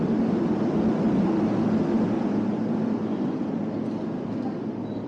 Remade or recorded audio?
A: recorded